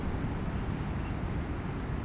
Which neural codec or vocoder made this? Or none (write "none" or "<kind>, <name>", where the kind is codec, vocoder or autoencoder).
none